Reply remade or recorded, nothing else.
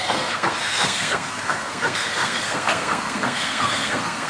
remade